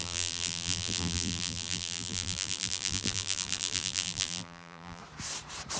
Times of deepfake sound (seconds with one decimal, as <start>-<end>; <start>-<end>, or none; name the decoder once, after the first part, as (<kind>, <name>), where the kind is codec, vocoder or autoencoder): 0.0-5.0 (vocoder, BigVGAN v2)